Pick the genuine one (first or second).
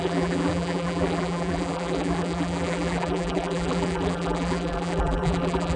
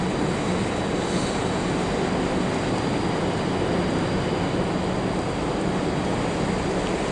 second